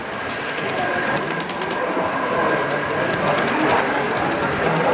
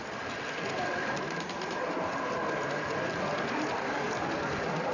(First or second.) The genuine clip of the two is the first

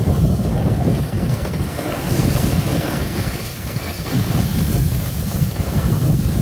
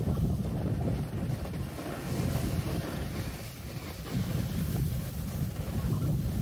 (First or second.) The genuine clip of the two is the second